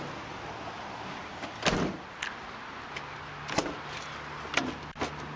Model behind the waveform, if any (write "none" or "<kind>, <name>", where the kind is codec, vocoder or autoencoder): none